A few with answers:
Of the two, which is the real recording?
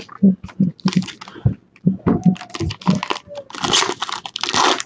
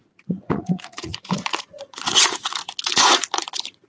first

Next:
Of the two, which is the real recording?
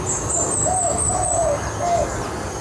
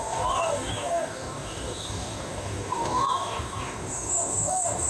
first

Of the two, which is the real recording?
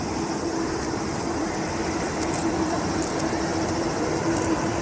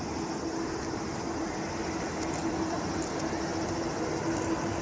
second